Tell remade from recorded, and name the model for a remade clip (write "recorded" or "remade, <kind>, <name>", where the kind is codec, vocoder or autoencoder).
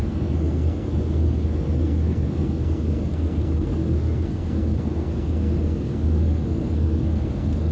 remade, codec, SNAC